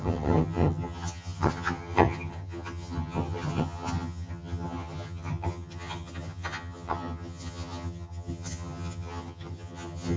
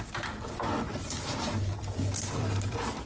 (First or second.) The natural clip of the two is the second